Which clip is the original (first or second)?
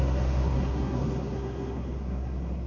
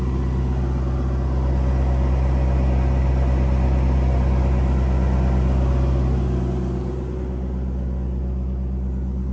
second